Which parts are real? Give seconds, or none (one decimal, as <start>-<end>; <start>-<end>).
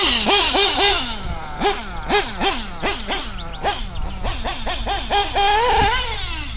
0.0-6.6